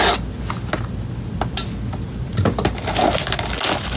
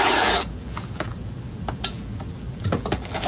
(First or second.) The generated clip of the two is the second